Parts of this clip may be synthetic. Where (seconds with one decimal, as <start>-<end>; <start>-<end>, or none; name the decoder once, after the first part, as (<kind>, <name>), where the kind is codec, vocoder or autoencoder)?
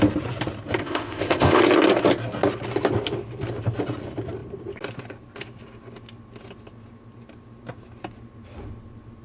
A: 0.8-1.6 (codec, ZipCodec)